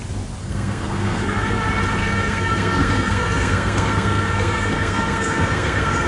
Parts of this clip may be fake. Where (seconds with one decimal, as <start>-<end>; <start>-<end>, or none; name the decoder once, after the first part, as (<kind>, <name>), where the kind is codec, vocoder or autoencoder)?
0.4-1.6 (codec, SNAC); 2.0-6.1